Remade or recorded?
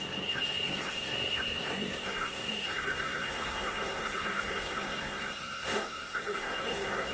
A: remade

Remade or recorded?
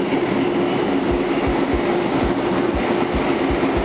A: recorded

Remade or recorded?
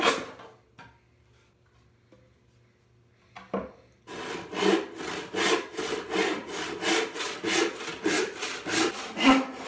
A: recorded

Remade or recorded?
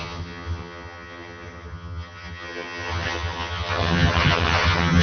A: remade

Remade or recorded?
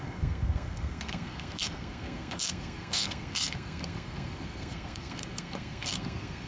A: remade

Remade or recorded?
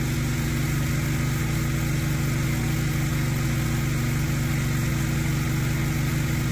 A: recorded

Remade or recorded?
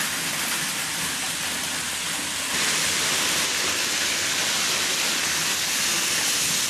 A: recorded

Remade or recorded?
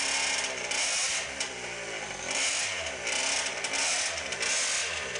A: recorded